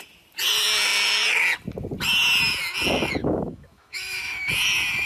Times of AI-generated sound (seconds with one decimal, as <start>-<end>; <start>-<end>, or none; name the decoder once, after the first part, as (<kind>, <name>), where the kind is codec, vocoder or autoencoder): 3.2-4.5 (autoencoder, DAC-VAE)